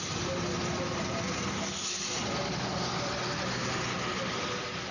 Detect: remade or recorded recorded